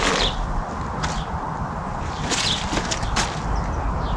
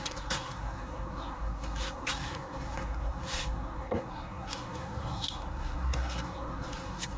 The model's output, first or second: second